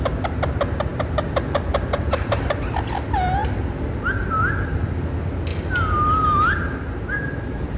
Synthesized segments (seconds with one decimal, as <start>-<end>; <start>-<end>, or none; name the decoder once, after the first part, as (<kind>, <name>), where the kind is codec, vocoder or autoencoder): none

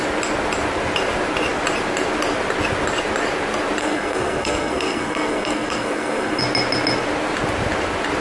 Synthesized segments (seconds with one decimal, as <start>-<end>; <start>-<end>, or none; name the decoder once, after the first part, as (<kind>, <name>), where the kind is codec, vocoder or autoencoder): 3.8-6.4 (codec, SNAC)

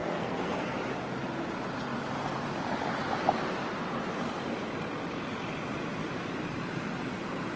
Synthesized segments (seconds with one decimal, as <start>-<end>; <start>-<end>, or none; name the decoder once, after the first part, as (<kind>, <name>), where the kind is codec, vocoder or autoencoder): 0.0-0.8 (codec, SNAC)

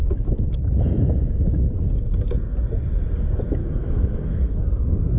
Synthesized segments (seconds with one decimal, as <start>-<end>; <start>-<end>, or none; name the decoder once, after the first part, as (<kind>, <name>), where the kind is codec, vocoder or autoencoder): 3.6-4.5 (codec, SNAC)

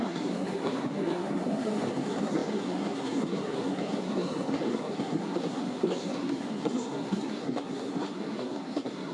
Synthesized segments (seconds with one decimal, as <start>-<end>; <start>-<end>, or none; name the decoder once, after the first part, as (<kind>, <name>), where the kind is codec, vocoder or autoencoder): 0.0-9.1 (codec, SNAC)

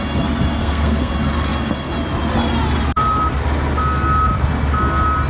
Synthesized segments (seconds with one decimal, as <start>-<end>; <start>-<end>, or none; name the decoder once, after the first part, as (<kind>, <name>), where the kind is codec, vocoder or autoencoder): 0.6-1.1 (codec, SNAC)

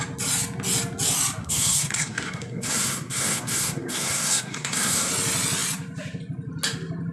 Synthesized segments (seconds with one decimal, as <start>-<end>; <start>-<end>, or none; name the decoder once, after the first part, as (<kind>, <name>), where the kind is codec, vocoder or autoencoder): 1.4-5.1 (codec, SNAC)

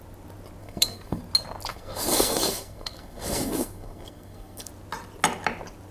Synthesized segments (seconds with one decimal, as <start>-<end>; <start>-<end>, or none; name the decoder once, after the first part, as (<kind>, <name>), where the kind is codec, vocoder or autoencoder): 0.6-1.2 (codec, SNAC); 1.7-4.7